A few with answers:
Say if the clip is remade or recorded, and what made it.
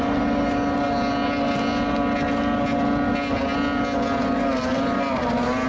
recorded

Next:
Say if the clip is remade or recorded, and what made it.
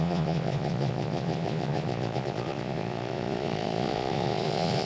remade, vocoder, Vocos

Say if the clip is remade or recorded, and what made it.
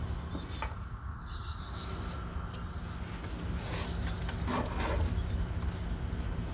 recorded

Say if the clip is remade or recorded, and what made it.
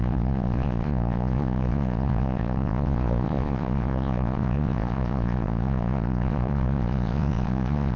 remade, vocoder, Vocos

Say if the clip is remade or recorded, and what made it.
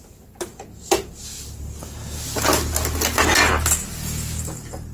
recorded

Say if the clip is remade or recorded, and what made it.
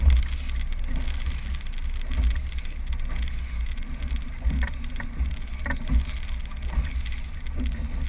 recorded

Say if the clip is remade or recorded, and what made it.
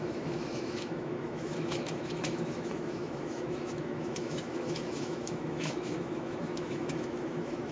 remade, autoencoder, DAC-VAE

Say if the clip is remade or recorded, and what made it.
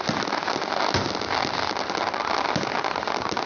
recorded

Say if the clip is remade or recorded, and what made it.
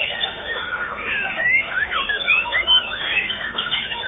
remade, autoencoder, DAC-VAE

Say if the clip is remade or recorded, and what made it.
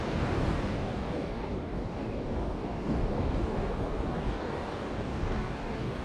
remade, codec, DAC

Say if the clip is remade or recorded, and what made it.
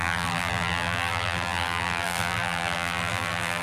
remade, vocoder, BigVGAN v2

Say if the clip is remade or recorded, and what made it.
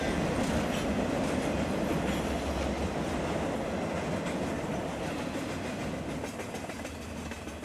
recorded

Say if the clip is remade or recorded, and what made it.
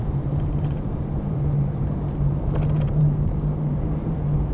remade, vocoder, BigVGAN v2